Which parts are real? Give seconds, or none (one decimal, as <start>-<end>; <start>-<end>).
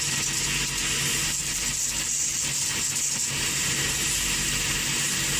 0.0-5.4